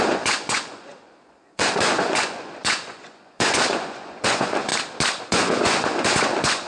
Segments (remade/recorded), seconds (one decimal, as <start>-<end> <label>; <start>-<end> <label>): 0.0-4.7 remade; 4.7-5.2 recorded; 5.2-6.7 remade